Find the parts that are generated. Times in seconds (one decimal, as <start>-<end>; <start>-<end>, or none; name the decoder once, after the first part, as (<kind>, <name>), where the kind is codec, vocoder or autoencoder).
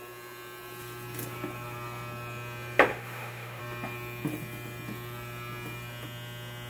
2.9-3.6 (autoencoder, DAC-VAE)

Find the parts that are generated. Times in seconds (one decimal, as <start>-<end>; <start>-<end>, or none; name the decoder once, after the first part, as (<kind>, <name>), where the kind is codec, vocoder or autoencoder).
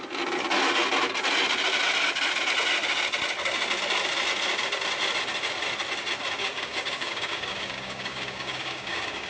6.4-9.3 (codec, DAC)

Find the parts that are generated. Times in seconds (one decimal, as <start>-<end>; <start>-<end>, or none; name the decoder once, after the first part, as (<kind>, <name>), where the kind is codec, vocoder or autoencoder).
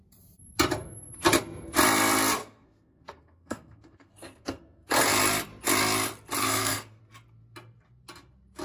2.4-4.9 (codec, SNAC); 6.4-7.0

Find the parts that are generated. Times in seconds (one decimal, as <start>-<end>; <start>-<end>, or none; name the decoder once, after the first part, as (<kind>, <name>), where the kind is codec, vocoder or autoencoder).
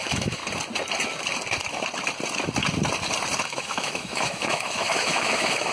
0.0-0.4 (autoencoder, DAC-VAE); 3.4-5.7